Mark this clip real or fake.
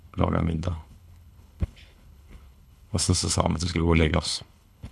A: fake